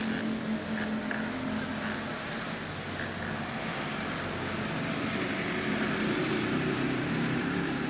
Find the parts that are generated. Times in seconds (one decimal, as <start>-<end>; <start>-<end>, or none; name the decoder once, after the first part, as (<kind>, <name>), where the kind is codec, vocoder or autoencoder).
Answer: 6.2-7.9 (vocoder, BigVGAN v2)